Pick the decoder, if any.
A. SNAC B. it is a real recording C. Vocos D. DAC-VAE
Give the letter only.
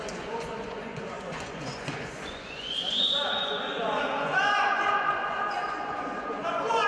C